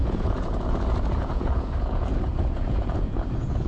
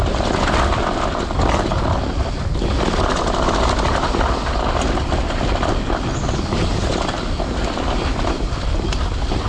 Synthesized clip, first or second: first